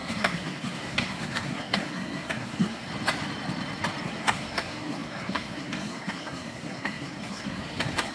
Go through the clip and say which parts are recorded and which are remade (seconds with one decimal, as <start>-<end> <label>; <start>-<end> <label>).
0.0-2.9 remade; 2.9-4.0 recorded; 4.0-8.1 remade